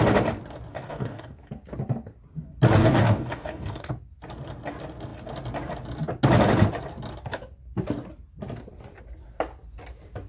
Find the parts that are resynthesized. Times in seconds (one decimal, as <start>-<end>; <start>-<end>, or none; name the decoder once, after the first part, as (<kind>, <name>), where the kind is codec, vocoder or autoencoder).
0.7-1.5 (codec, DAC); 2.8-3.9